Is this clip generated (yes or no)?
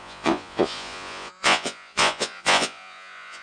yes